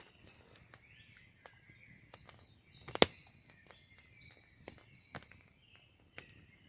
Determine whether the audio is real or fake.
real